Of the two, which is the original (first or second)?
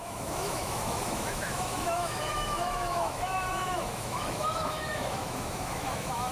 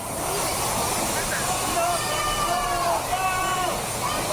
second